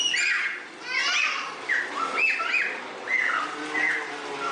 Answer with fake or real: real